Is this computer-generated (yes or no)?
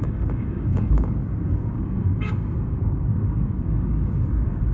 yes